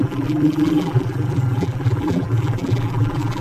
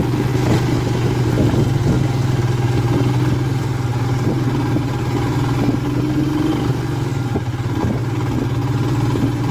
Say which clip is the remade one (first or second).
first